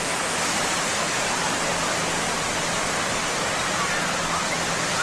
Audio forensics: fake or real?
real